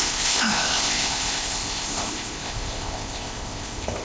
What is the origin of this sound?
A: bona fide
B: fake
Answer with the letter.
B